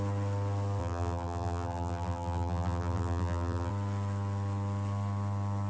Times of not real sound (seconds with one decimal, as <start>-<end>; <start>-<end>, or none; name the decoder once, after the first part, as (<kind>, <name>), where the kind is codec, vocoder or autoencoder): 0.8-3.7 (vocoder, BigVGAN v2)